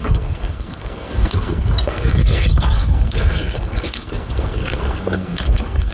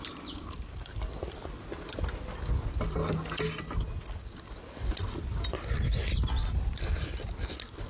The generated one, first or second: first